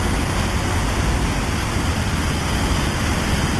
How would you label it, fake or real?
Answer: real